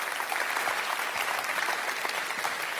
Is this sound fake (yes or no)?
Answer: no